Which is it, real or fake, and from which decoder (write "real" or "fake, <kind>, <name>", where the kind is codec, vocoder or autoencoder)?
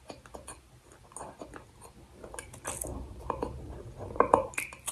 real